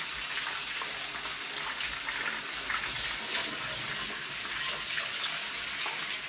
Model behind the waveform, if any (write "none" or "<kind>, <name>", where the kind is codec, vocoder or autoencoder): none